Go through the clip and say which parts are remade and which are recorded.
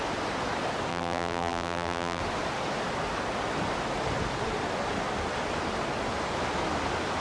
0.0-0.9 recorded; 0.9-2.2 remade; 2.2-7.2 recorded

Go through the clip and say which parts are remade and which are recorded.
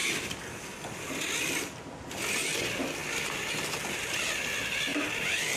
0.0-5.6 recorded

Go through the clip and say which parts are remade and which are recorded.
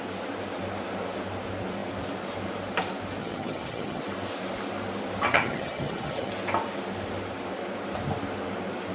0.0-3.2 recorded; 3.2-4.0 remade; 4.0-5.3 recorded; 5.3-6.3 remade; 6.3-8.9 recorded